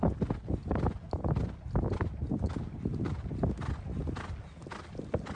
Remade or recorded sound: recorded